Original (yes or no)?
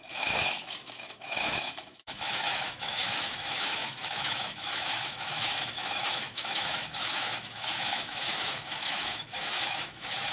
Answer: no